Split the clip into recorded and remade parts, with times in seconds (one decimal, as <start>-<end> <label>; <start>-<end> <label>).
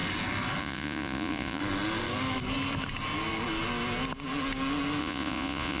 0.0-0.6 recorded; 0.6-1.6 remade; 1.6-5.0 recorded; 5.0-5.8 remade